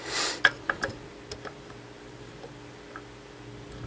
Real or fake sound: real